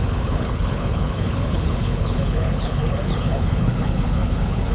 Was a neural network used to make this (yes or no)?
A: yes